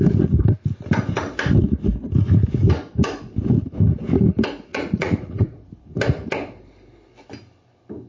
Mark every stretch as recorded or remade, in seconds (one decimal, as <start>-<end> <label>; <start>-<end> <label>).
0.0-4.7 recorded; 4.7-5.8 remade; 5.8-8.1 recorded

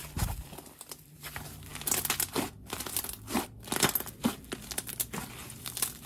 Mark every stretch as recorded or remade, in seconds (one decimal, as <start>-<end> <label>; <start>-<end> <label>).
0.0-1.7 remade; 1.7-5.4 recorded; 5.4-6.1 remade

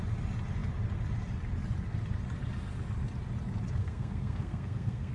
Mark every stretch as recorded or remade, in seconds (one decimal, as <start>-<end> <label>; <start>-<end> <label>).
0.0-3.8 recorded; 3.8-5.1 remade

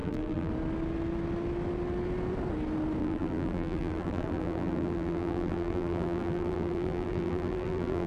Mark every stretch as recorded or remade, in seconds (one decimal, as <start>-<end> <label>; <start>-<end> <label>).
0.0-0.5 remade; 0.5-3.0 recorded; 3.0-8.1 remade

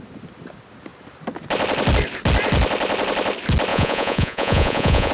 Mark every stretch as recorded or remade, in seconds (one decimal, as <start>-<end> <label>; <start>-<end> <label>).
0.0-3.7 recorded; 3.7-5.1 remade

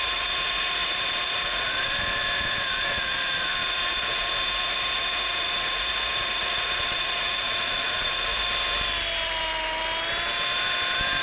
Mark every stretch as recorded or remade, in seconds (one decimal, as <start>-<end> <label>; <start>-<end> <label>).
0.0-8.4 remade; 8.4-11.2 recorded

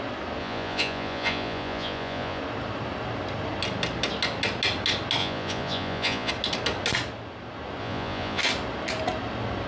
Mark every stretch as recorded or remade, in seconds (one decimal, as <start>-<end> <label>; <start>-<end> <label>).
0.0-0.4 recorded; 0.4-2.4 remade; 2.4-5.2 recorded; 5.2-6.3 remade; 6.3-7.8 recorded; 7.8-8.4 remade; 8.4-9.7 recorded

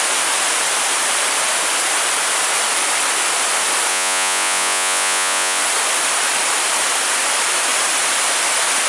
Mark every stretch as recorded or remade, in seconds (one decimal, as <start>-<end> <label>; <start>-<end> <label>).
0.0-3.9 recorded; 3.9-5.6 remade; 5.6-8.9 recorded